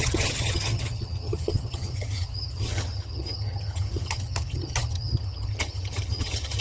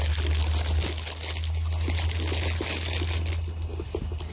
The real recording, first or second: second